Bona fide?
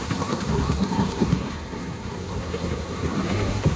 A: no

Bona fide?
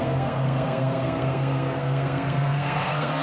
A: no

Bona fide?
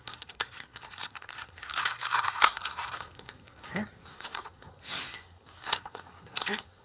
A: no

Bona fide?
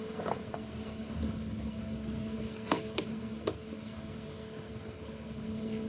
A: no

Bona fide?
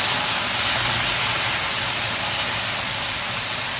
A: yes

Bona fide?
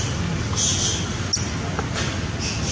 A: yes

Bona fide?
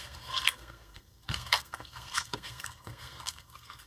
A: no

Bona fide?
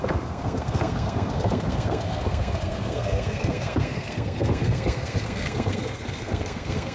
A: no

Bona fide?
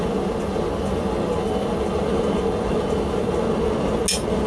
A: yes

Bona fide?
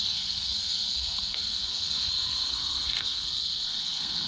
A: no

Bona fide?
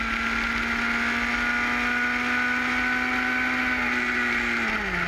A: yes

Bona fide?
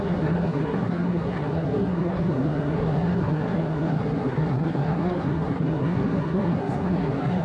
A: no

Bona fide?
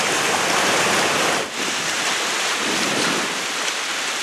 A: yes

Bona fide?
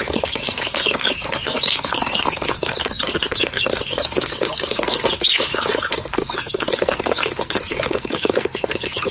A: no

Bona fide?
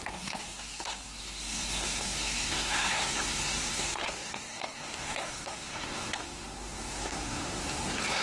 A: no